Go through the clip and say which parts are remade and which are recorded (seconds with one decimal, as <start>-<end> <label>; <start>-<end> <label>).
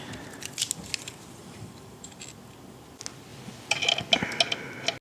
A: 0.0-1.4 recorded; 1.4-2.2 remade; 2.2-5.0 recorded